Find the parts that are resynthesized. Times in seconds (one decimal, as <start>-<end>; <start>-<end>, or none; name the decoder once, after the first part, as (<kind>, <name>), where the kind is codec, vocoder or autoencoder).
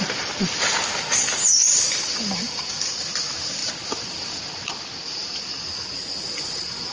none